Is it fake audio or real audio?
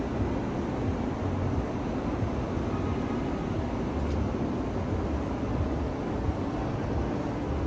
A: real